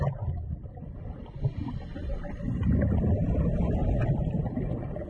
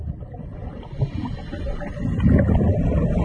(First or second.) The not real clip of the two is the first